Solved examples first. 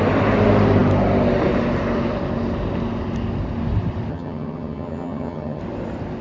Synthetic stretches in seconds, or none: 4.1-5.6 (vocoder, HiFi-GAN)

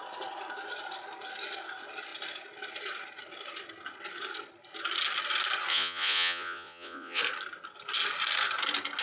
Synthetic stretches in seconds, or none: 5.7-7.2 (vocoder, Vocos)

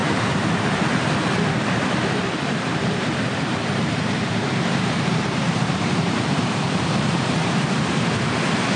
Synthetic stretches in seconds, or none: 0.0-1.1 (vocoder, BigVGAN v2); 2.2-7.1

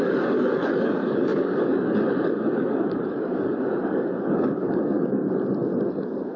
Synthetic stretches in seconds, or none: 0.0-5.2 (codec, DAC); 5.9-6.4

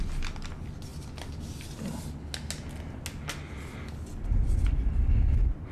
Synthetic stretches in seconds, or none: none